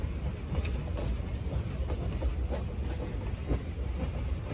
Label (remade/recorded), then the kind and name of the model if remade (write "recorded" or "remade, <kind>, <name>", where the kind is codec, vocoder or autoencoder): recorded